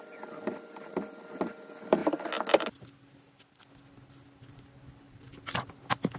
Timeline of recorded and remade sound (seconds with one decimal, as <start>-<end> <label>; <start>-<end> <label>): 0.0-6.2 recorded